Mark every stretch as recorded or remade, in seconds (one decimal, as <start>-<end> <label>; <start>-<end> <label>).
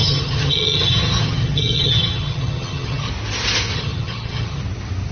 0.0-3.1 remade; 3.1-3.7 recorded; 3.7-4.6 remade; 4.6-5.1 recorded